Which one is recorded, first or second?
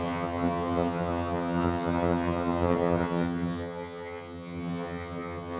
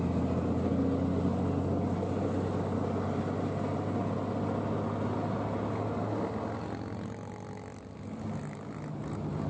second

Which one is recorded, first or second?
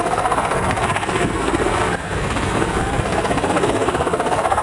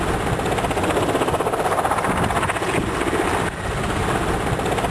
second